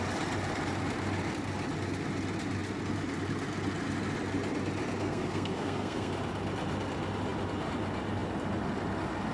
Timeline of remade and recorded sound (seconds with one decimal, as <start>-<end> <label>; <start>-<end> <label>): 0.0-5.0 recorded; 5.0-6.1 remade; 6.1-9.3 recorded

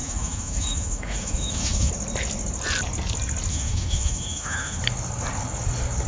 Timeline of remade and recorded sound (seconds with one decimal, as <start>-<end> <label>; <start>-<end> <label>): 0.0-1.9 remade; 1.9-3.5 recorded; 3.5-4.8 remade; 4.8-6.1 recorded

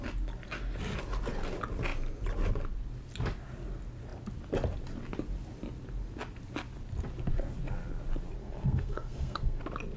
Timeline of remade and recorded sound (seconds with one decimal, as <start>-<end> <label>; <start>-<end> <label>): 0.0-8.4 recorded; 8.4-9.6 remade; 9.6-10.0 recorded

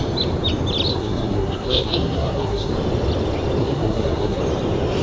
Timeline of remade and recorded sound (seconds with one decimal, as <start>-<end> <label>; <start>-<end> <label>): 0.0-0.9 recorded; 0.9-2.7 remade; 2.7-3.6 recorded; 3.6-4.4 remade; 4.4-5.0 recorded

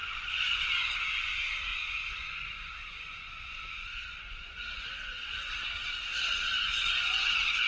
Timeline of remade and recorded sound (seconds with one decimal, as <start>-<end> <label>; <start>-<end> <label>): 0.0-0.7 remade; 0.7-1.7 recorded; 1.7-5.5 remade; 5.5-6.6 recorded; 6.6-7.7 remade

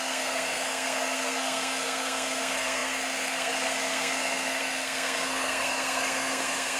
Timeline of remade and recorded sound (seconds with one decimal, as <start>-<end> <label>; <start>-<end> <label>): 0.0-6.8 remade

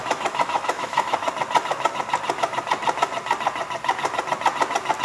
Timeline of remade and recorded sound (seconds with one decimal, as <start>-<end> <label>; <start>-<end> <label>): 0.0-1.3 remade; 1.3-5.0 recorded